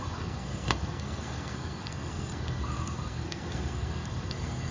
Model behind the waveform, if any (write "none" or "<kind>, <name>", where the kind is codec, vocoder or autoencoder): codec, SNAC